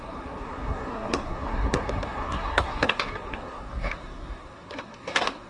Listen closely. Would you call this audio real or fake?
fake